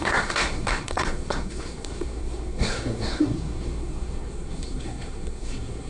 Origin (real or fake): fake